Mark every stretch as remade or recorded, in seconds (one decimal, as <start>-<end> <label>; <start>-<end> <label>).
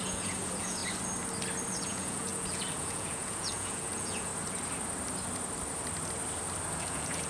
0.0-0.8 remade; 0.8-1.8 recorded; 1.8-4.3 remade; 4.3-6.8 recorded; 6.8-7.3 remade